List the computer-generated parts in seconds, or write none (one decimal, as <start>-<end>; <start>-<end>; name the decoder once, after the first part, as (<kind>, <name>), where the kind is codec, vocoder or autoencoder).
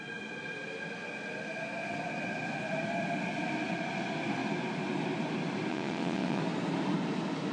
5.7-6.4 (vocoder, WaveNeXt)